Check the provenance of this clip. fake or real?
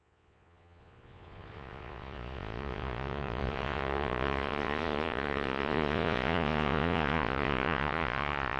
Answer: fake